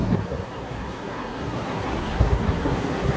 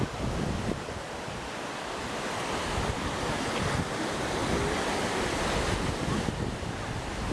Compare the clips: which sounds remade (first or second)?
first